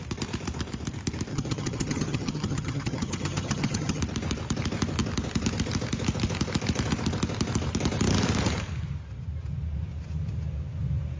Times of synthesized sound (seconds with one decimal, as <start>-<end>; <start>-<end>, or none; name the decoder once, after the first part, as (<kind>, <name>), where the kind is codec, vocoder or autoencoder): 1.3-4.0 (vocoder, HiFi-GAN)